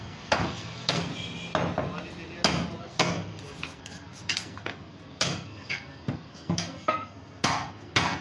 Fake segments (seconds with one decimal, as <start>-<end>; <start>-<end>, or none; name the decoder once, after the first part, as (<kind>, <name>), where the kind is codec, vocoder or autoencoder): 0.0-1.1 (codec, SNAC); 2.8-8.2